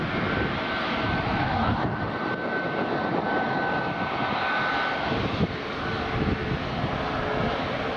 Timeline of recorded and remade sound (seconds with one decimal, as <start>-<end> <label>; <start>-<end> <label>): 0.0-1.4 recorded; 1.4-2.0 remade; 2.0-8.0 recorded